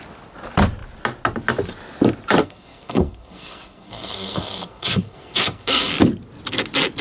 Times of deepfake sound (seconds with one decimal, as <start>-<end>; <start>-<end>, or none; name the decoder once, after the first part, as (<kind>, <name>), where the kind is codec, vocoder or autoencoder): 2.4-5.9 (codec, SNAC)